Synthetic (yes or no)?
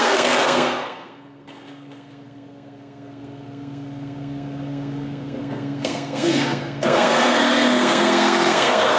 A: yes